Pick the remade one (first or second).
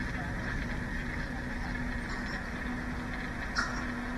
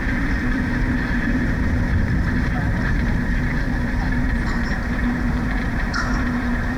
second